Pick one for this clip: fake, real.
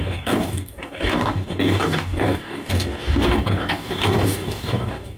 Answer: fake